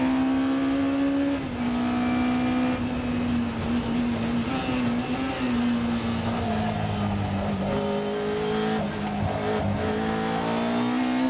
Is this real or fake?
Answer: real